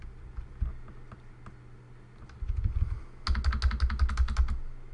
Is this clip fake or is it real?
real